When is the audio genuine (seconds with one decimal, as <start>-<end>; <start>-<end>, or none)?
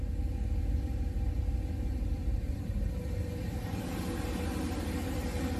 0.0-0.6; 4.0-5.6